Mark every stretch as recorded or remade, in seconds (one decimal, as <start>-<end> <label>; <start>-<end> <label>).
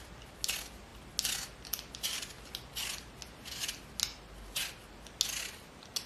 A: 0.0-6.1 recorded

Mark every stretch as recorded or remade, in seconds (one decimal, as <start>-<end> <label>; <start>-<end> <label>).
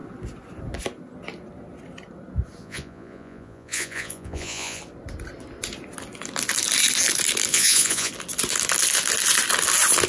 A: 0.0-2.6 recorded; 2.6-4.8 remade; 4.8-7.5 recorded; 7.5-8.1 remade; 8.1-10.1 recorded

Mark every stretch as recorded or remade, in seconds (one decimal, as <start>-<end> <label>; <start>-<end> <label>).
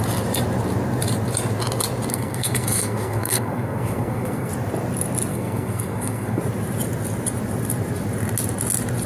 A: 0.0-2.1 recorded; 2.1-4.5 remade; 4.5-5.3 recorded; 5.3-6.4 remade; 6.4-9.1 recorded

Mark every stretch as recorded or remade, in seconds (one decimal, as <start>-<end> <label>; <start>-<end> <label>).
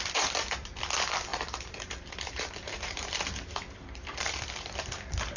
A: 0.0-1.3 recorded; 1.3-4.5 remade; 4.5-5.4 recorded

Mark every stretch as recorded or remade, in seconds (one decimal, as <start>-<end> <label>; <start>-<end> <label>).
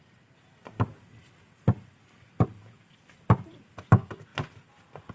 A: 0.0-5.1 recorded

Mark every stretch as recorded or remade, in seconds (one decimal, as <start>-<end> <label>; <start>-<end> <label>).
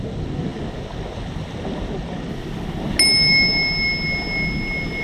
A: 0.0-5.0 recorded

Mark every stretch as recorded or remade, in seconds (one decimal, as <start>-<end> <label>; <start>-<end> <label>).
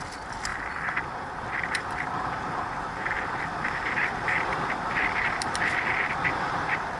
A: 0.0-7.0 recorded